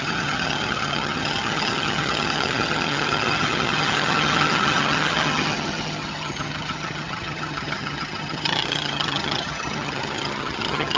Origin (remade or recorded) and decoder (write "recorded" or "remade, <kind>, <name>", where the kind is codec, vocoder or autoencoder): remade, vocoder, HiFi-GAN